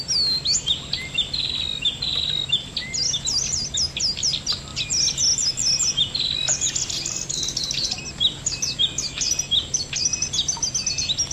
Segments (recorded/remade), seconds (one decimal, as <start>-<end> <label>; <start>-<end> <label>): 0.0-11.3 recorded